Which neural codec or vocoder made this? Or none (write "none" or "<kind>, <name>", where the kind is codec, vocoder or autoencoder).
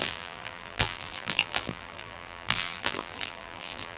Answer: vocoder, BigVGAN v2